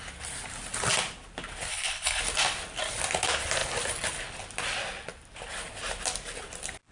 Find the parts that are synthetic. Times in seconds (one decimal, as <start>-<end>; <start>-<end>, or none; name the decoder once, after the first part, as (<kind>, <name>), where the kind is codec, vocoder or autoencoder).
1.7-2.2 (codec, HILCodec)